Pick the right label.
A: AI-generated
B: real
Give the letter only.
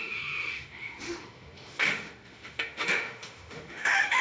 A